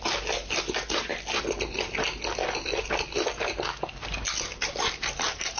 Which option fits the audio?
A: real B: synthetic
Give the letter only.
A